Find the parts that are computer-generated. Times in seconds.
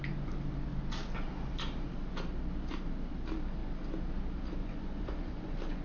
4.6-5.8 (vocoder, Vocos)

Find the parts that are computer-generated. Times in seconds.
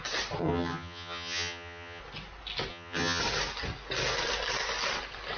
0.4-2.0 (vocoder, HiFi-GAN); 2.7-3.2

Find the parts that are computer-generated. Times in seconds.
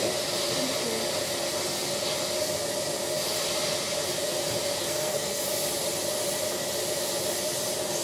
4.8-5.4 (codec, SNAC)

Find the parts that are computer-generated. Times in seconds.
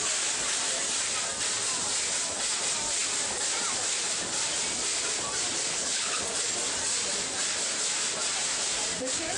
5.7-6.2 (codec, HILCodec)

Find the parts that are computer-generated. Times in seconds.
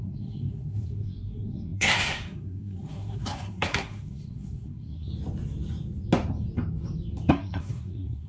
0.0-5.1 (codec, SNAC); 7.3-8.3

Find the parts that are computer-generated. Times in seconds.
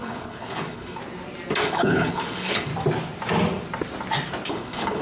0.0-1.0 (codec, HILCodec); 1.6-2.7; 4.5-5.0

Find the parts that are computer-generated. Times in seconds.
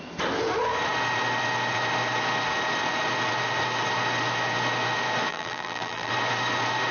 5.3-6.1 (vocoder, BigVGAN v2)